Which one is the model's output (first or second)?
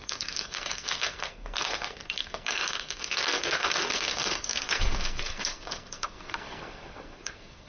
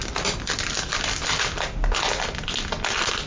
first